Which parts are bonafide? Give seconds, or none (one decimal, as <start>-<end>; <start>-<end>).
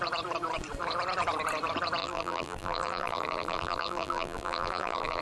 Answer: 0.0-2.0